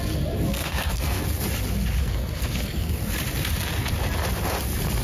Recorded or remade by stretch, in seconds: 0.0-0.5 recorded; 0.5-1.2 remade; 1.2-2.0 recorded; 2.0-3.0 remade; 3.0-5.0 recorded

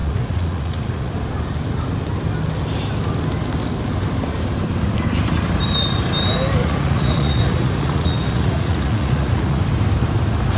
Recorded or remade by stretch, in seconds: 0.0-1.1 remade; 1.1-6.6 recorded; 6.6-9.6 remade; 9.6-10.6 recorded

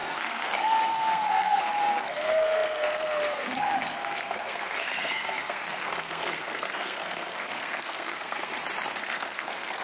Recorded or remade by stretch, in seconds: 0.0-8.5 remade; 8.5-9.0 recorded; 9.0-9.8 remade

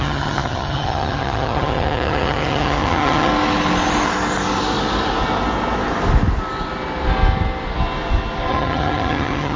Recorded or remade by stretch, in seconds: 0.0-3.3 remade; 3.3-8.5 recorded; 8.5-9.6 remade

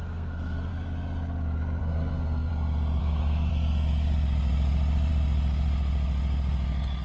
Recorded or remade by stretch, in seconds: 0.0-0.7 remade; 0.7-1.8 recorded; 1.8-2.5 remade; 2.5-3.0 recorded; 3.0-3.5 remade; 3.5-7.0 recorded

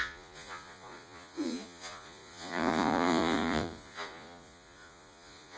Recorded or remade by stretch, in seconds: 0.0-5.6 remade

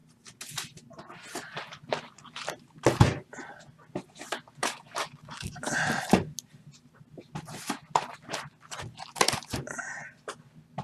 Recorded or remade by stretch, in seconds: 0.0-4.6 recorded; 4.6-5.8 remade; 5.8-10.8 recorded